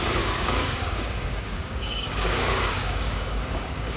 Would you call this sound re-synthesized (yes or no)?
yes